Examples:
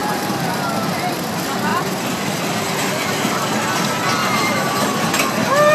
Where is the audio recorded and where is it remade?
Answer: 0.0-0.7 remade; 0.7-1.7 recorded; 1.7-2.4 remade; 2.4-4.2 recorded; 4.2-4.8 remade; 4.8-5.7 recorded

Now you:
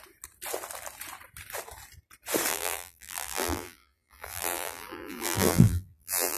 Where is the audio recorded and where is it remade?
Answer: 0.0-2.5 recorded; 2.5-6.4 remade

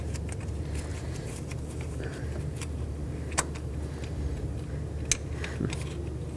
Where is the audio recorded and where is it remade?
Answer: 0.0-0.9 recorded; 0.9-4.7 remade; 4.7-6.4 recorded

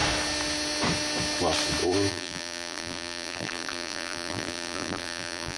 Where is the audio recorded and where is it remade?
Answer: 0.0-2.1 recorded; 2.1-5.6 remade

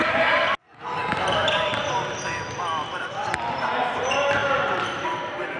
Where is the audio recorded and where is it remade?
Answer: 0.0-1.0 remade; 1.0-3.9 recorded; 3.9-5.6 remade

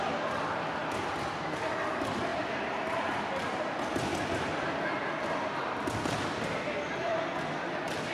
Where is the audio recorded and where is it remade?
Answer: 0.0-2.3 recorded; 2.3-5.0 remade; 5.0-8.1 recorded